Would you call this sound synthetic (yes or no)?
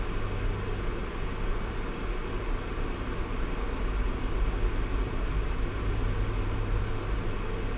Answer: no